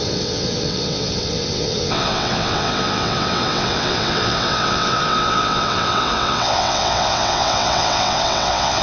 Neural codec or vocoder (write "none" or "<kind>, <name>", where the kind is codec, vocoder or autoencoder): vocoder, WaveNeXt